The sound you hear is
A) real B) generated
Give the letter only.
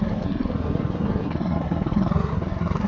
B